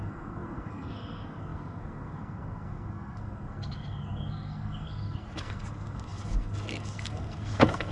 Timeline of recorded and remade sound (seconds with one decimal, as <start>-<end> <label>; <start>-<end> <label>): 0.0-7.9 remade